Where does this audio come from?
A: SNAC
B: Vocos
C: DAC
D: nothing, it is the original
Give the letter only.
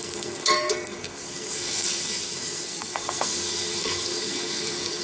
A